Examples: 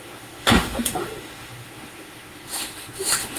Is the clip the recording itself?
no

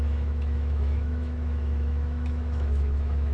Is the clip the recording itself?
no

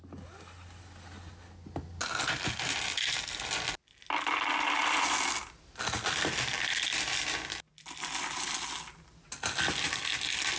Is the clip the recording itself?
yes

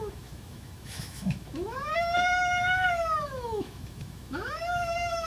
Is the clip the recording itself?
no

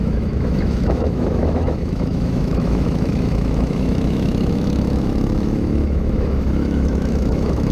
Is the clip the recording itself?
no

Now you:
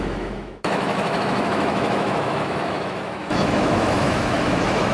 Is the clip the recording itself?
no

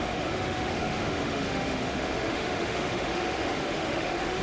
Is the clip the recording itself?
no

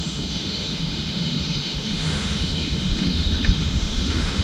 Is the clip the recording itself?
no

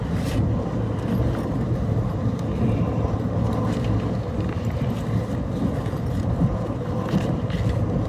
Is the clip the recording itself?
yes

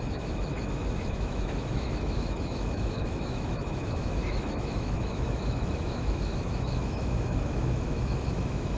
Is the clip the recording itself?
no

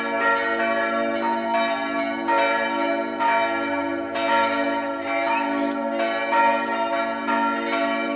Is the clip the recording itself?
yes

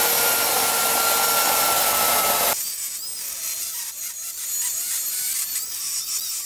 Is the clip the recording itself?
yes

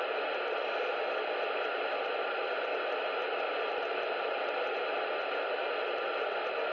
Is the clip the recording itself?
yes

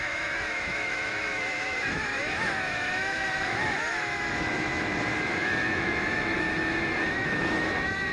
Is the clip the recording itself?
no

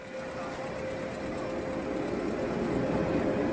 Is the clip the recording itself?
yes